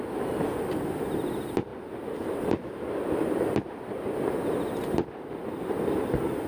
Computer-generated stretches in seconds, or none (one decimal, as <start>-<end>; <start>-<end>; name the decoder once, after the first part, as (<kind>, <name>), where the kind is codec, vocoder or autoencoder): none